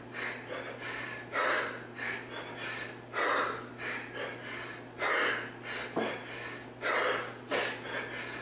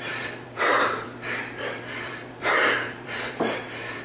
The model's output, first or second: second